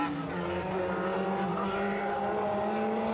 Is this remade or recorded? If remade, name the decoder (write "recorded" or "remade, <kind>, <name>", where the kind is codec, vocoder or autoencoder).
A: recorded